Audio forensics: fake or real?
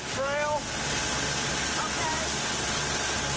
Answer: real